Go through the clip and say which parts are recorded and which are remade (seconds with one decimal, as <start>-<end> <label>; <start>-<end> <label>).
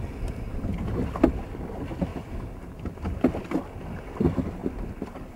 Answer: 0.0-5.4 recorded